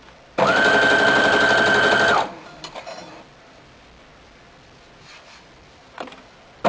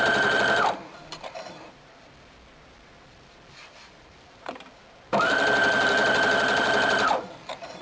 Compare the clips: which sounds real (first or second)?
first